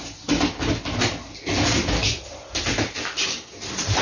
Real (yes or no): yes